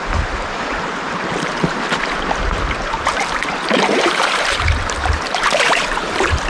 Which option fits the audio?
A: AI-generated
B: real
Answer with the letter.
A